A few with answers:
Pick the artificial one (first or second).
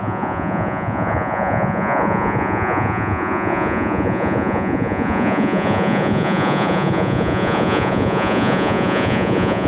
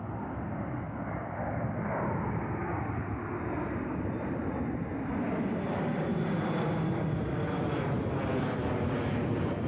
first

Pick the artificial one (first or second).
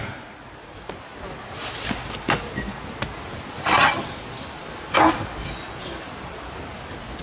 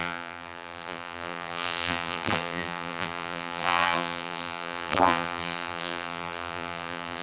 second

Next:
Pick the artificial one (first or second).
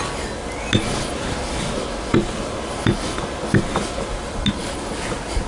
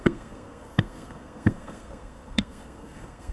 second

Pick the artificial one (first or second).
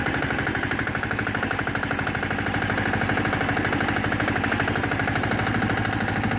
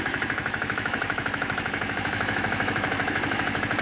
second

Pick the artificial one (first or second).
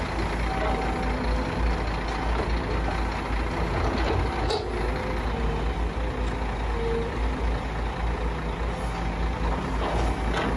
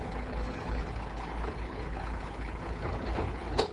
second